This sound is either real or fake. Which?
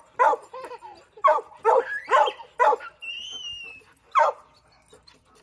real